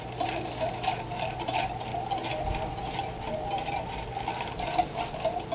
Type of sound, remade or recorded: recorded